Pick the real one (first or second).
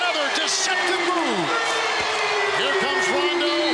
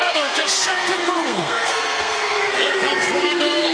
first